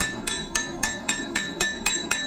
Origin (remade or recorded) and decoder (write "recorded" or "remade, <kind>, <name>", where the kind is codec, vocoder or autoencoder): remade, codec, SNAC